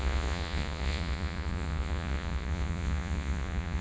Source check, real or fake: fake